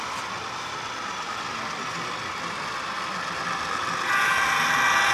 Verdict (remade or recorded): recorded